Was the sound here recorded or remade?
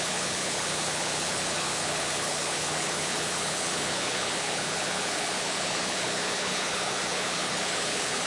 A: remade